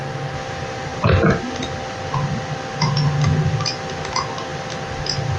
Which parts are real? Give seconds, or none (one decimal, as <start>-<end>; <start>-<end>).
0.0-5.4